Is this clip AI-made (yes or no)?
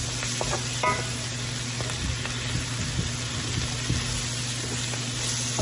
no